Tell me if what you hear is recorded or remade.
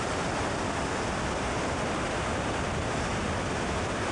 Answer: recorded